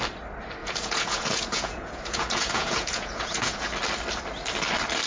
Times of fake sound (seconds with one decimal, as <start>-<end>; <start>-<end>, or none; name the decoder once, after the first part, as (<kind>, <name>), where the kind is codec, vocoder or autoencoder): 0.6-3.7 (vocoder, Vocos)